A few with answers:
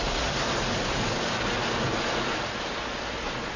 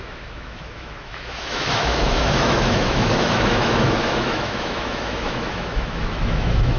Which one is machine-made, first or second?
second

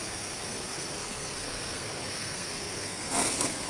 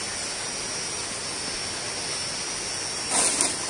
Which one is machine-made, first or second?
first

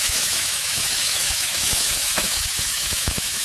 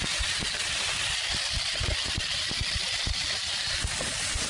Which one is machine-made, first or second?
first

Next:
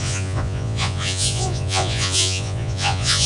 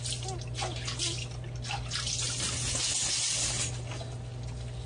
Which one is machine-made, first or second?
first